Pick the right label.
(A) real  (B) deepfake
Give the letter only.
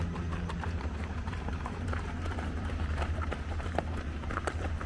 B